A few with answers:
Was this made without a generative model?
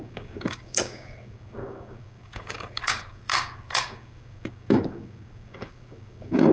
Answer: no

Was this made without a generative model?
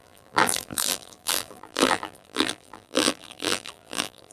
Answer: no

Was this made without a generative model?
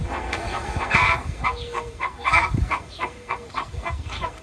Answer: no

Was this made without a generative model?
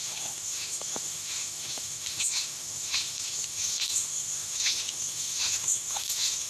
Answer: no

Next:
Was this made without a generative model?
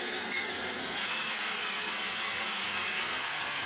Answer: no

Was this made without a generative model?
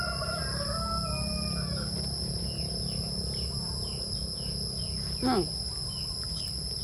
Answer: yes